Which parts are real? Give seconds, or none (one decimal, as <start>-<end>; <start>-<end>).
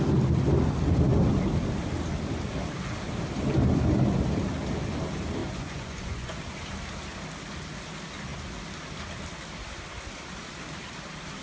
0.0-5.4; 6.4-11.4